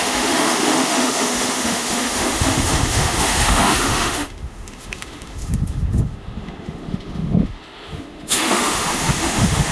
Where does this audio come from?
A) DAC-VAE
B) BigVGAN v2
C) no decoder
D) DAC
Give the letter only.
A